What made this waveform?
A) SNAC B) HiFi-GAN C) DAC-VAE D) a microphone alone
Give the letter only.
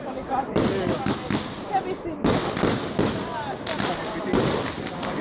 D